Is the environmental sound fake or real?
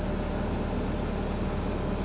real